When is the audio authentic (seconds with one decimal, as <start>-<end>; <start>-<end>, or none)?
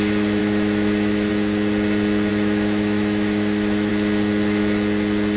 0.0-0.4; 1.3-2.3; 3.9-5.4